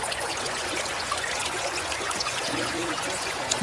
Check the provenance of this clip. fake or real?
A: fake